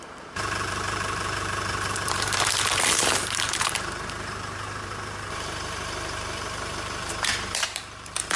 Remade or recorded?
remade